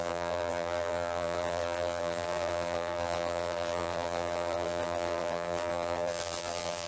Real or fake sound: fake